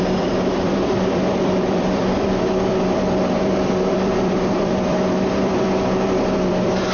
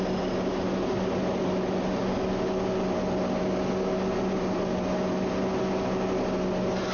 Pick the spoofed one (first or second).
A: first